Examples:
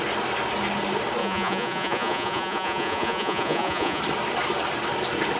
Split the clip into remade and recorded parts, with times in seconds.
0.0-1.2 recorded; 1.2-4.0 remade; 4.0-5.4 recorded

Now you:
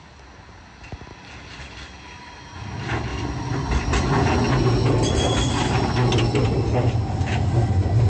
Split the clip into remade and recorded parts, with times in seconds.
0.0-3.1 recorded; 3.1-3.7 remade; 3.7-8.1 recorded

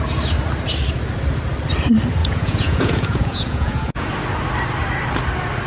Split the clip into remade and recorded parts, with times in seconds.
0.0-2.2 recorded; 2.2-4.1 remade; 4.1-5.7 recorded

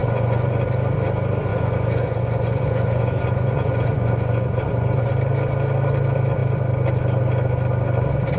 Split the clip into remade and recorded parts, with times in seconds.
0.0-0.6 remade; 0.6-1.5 recorded; 1.5-5.1 remade; 5.1-8.4 recorded

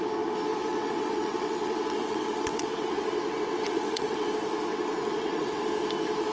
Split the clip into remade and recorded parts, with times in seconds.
0.0-0.5 recorded; 0.5-4.3 remade; 4.3-4.7 recorded; 4.7-5.6 remade; 5.6-6.3 recorded